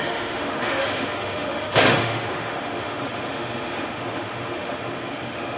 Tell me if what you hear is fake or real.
fake